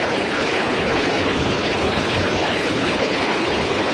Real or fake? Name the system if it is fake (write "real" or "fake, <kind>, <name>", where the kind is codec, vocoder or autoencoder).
fake, codec, HILCodec